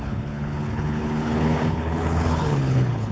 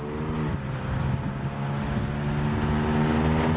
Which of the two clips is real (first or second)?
second